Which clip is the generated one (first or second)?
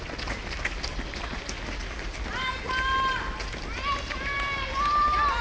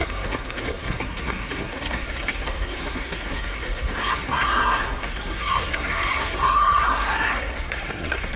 second